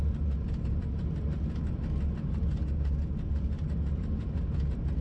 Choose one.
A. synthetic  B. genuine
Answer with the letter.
B